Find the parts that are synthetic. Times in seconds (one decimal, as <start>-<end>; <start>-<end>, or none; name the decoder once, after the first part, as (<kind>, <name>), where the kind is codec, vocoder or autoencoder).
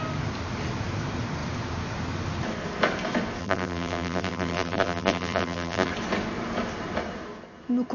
3.4-5.9 (vocoder, BigVGAN v2)